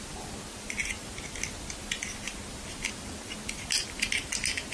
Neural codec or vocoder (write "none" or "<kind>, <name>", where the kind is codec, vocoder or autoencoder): none